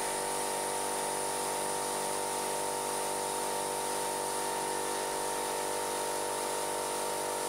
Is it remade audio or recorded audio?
recorded